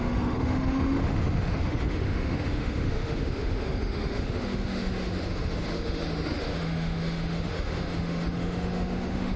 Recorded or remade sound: remade